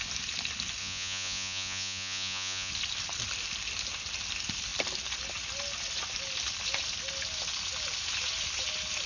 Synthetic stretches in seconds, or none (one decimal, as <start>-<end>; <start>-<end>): 0.8-2.7